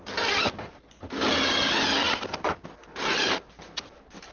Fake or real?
real